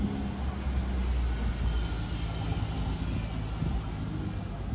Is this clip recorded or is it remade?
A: recorded